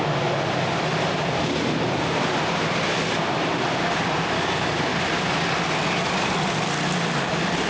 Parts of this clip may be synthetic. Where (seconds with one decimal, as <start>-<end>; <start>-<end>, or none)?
4.9-6.5